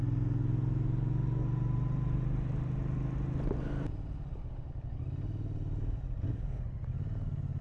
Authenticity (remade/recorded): recorded